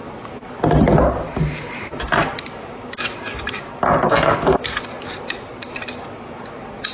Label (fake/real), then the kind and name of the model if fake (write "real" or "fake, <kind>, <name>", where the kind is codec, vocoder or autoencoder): real